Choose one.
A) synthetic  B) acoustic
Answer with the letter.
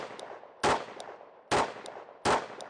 B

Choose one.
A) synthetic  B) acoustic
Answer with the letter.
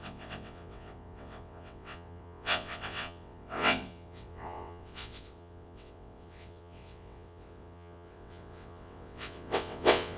A